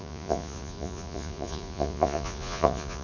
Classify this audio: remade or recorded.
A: remade